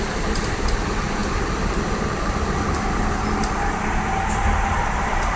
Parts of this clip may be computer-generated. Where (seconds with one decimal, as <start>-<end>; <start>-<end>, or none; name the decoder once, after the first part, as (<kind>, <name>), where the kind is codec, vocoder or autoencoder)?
none